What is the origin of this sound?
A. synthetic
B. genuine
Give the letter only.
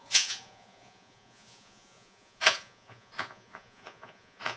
A